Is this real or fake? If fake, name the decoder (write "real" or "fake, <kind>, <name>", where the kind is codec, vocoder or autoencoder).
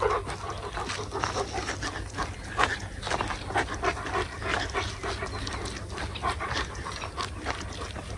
real